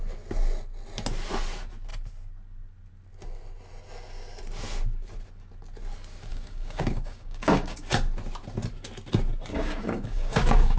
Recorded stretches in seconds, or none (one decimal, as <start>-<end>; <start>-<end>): 0.0-6.3; 7.9-9.5